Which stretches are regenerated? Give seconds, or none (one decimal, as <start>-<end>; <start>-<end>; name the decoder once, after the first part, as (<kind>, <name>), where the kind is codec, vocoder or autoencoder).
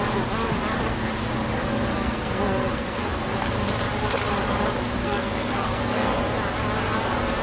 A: 1.9-3.1 (codec, SNAC); 5.0-6.2